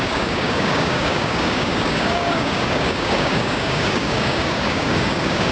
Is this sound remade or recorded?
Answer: remade